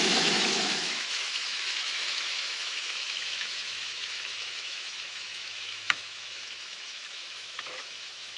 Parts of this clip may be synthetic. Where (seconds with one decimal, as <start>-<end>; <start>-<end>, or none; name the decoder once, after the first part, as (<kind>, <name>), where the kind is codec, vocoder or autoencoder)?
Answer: 0.0-8.4 (autoencoder, DAC-VAE)